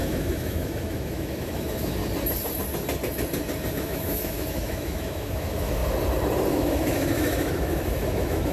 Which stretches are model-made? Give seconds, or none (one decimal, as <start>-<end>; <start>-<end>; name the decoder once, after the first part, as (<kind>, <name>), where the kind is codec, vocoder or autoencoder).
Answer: 0.0-2.0 (autoencoder, DAC-VAE); 3.7-5.8; 6.5-8.5